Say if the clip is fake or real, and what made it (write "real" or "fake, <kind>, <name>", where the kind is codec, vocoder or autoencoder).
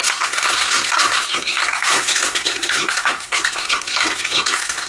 fake, codec, SNAC